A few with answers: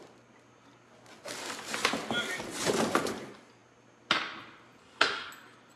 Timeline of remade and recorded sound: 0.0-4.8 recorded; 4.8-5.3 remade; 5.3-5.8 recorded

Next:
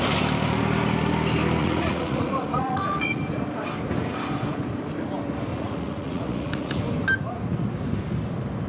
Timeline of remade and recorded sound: 0.0-1.6 recorded; 1.6-3.2 remade; 3.2-5.5 recorded; 5.5-6.8 remade; 6.8-8.7 recorded

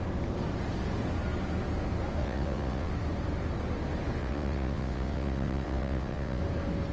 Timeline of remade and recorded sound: 0.0-2.2 recorded; 2.2-2.9 remade; 2.9-4.2 recorded; 4.2-6.4 remade; 6.4-6.9 recorded

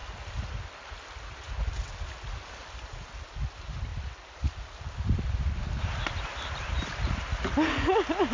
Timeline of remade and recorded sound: 0.0-3.2 remade; 3.2-3.9 recorded; 3.9-7.2 remade; 7.2-8.3 recorded

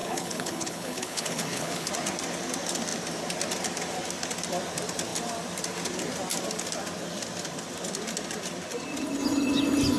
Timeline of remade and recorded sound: 0.0-1.9 remade; 1.9-10.0 recorded

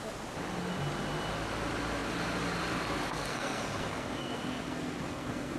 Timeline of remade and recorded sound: 0.0-3.1 recorded; 3.1-5.6 remade

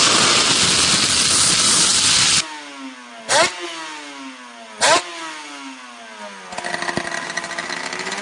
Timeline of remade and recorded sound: 0.0-8.2 recorded